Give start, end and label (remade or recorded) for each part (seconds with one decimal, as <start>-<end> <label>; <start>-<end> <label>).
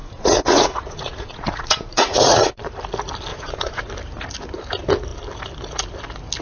0.0-2.5 remade; 2.5-3.3 recorded; 3.3-3.8 remade; 3.8-6.4 recorded